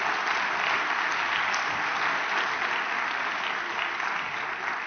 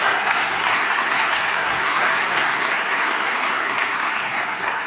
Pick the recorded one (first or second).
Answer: first